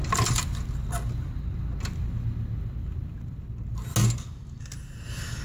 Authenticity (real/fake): real